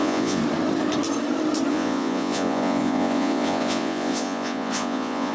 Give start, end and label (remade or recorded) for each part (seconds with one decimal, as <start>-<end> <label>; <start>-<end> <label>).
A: 0.0-0.4 remade; 0.4-1.7 recorded; 1.7-5.3 remade